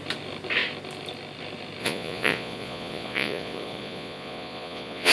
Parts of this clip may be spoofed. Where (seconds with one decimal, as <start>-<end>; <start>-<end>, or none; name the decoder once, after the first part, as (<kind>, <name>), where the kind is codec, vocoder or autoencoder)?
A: 1.8-5.1 (vocoder, Vocos)